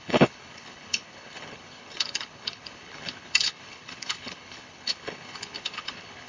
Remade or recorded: remade